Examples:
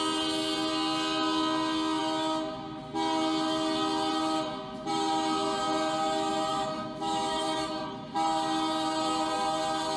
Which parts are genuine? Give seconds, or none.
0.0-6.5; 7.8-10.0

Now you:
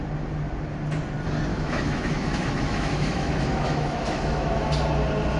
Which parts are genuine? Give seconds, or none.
0.0-1.5; 4.7-5.4

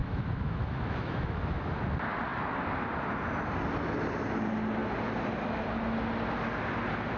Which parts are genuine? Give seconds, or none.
1.6-7.2

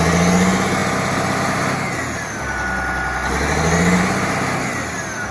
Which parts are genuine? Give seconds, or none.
0.0-5.3

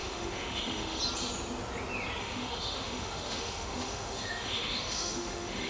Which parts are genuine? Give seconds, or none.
1.0-2.2